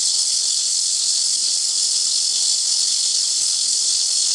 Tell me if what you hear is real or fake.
fake